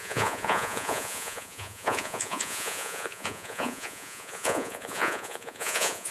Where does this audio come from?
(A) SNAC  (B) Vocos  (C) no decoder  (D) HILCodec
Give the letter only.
B